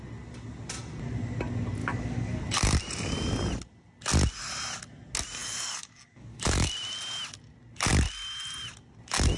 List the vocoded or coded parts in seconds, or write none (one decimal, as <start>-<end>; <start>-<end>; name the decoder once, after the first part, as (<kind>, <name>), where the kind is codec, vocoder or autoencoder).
1.8-2.4 (codec, DAC); 5.4-6.7